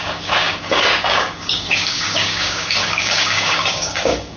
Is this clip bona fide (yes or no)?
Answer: no